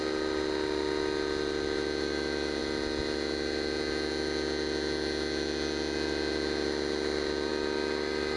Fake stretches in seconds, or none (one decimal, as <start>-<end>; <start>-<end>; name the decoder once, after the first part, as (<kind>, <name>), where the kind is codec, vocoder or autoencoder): none